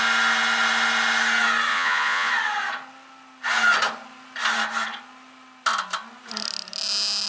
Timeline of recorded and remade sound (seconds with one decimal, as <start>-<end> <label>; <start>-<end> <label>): 0.0-1.7 recorded; 1.7-2.3 remade; 2.3-7.3 recorded